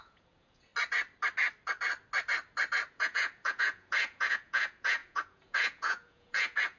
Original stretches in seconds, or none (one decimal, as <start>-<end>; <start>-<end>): 0.7-2.9